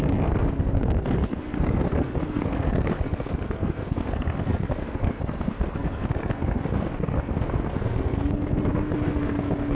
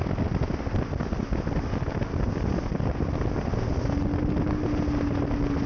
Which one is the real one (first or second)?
second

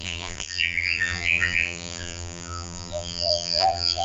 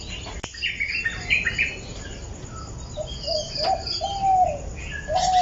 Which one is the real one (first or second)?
second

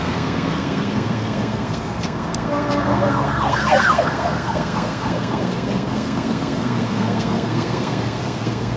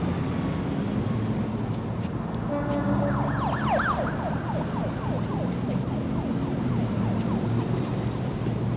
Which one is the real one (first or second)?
second